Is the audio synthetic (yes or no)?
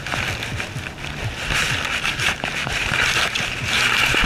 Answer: no